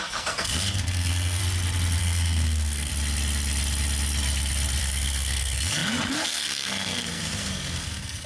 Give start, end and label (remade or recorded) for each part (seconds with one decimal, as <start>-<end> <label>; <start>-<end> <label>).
0.0-1.4 remade; 1.4-2.0 recorded; 2.0-2.9 remade; 2.9-4.8 recorded; 4.8-8.3 remade

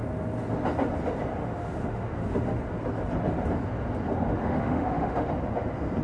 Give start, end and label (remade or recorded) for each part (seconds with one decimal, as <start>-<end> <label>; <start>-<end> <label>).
0.0-1.4 recorded; 1.4-2.6 remade; 2.6-4.4 recorded; 4.4-5.3 remade; 5.3-6.0 recorded

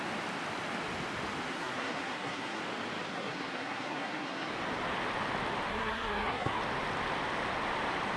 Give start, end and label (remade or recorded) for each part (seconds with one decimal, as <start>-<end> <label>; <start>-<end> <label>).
0.0-1.5 recorded; 1.5-2.6 remade; 2.6-3.1 recorded; 3.1-4.5 remade; 4.5-5.7 recorded; 5.7-6.6 remade; 6.6-8.2 recorded